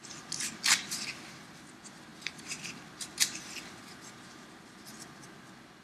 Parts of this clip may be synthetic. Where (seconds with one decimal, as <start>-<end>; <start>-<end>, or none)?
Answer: none